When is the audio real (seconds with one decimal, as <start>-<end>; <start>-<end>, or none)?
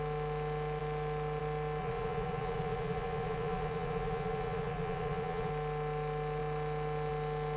0.0-1.8; 5.5-7.6